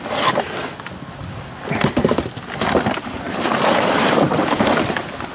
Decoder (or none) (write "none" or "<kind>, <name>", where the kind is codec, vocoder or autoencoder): none